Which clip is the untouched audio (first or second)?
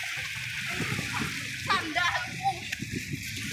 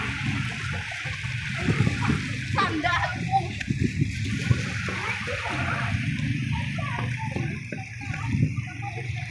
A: first